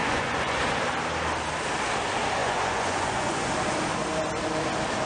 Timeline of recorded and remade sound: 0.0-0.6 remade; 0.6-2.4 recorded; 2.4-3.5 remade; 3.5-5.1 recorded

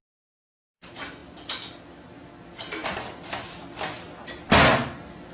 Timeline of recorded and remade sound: 0.0-5.3 recorded

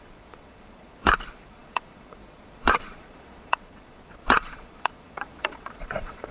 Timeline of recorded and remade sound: 0.0-6.3 remade